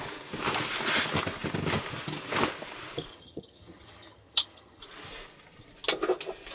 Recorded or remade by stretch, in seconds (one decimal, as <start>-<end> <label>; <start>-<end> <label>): 0.0-3.1 recorded; 3.1-4.8 remade; 4.8-6.5 recorded